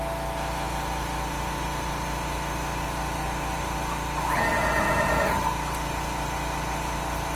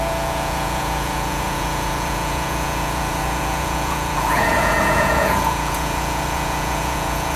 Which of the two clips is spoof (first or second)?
second